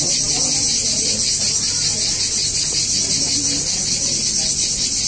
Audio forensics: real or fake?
real